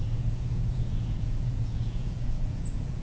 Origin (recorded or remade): remade